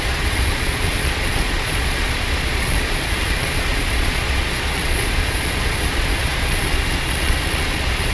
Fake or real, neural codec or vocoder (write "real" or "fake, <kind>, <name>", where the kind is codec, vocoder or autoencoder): fake, vocoder, Vocos